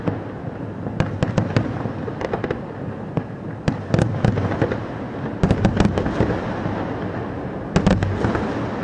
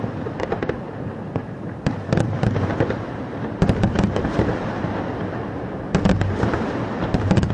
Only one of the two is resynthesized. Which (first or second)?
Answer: second